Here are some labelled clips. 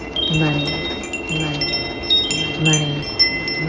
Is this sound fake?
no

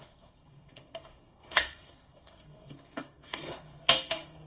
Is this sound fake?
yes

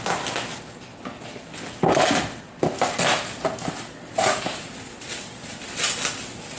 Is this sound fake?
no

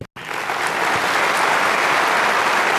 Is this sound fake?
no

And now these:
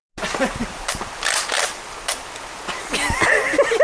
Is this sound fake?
no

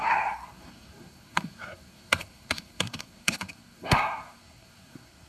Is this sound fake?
yes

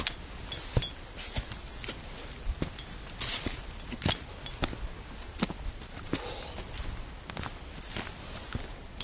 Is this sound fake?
no